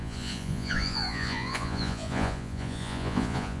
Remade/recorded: remade